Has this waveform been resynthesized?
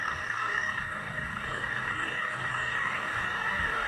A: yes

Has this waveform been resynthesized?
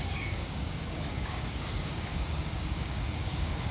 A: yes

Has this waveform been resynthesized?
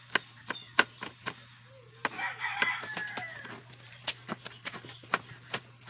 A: no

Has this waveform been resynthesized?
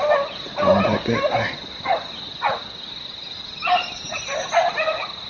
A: no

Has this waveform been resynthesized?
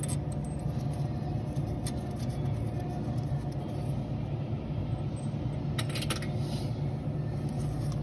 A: no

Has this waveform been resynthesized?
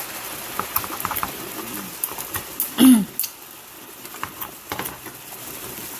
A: no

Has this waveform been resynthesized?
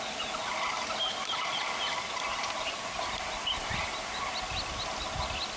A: no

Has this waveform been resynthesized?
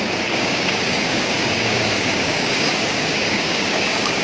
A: yes